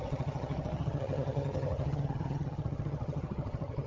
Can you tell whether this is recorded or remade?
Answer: remade